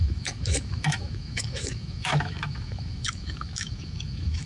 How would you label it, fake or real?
fake